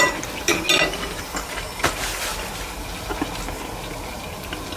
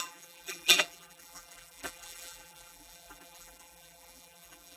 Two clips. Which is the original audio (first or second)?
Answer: first